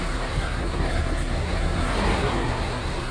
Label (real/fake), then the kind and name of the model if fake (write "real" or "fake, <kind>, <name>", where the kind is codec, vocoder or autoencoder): fake, codec, SNAC